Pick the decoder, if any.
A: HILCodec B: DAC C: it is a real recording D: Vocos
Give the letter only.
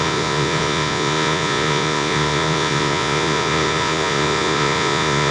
D